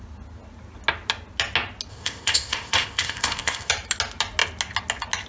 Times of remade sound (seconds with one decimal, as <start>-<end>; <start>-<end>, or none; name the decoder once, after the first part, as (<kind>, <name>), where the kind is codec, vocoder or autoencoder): 1.9-3.7 (codec, ZipCodec)